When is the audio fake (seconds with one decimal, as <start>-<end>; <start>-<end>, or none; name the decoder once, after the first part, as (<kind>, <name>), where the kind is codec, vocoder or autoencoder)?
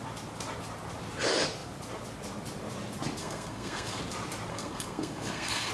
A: 3.2-4.0 (codec, SNAC); 4.5-5.7